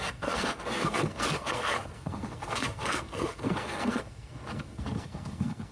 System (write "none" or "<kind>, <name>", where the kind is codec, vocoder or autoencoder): codec, SNAC